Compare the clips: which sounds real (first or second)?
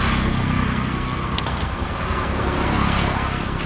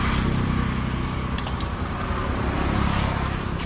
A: second